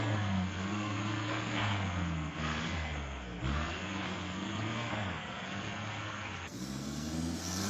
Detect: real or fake fake